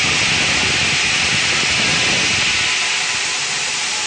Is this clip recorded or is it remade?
recorded